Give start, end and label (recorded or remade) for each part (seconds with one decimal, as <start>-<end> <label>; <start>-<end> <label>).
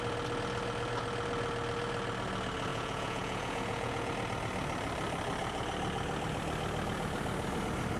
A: 0.0-2.7 recorded; 2.7-4.1 remade; 4.1-8.0 recorded